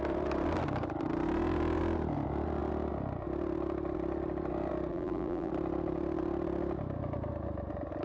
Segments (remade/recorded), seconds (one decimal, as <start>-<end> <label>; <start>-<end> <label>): 0.0-4.9 recorded; 4.9-5.5 remade; 5.5-8.0 recorded